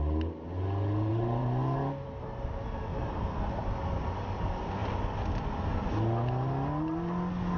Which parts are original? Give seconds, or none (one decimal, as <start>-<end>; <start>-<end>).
0.0-1.1; 1.8-2.9; 3.7-7.6